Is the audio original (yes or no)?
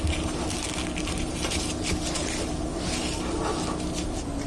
yes